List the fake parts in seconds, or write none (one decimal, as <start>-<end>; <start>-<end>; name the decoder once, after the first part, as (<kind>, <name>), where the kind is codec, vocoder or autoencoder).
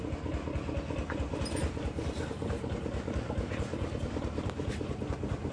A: 1.6-4.9 (vocoder, BigVGAN v2)